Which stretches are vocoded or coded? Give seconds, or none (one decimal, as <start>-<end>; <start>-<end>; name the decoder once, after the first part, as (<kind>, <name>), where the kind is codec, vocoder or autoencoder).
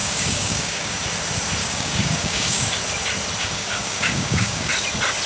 0.0-1.0 (codec, DAC); 1.6-2.8; 3.4-4.7